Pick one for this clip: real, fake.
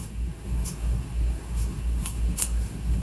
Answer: fake